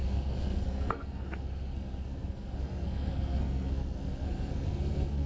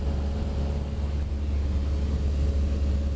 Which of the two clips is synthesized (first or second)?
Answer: first